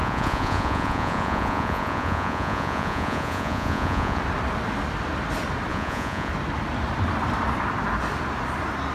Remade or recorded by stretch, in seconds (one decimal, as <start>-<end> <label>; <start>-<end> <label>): 0.0-4.2 remade; 4.2-5.7 recorded; 5.7-6.3 remade; 6.3-8.9 recorded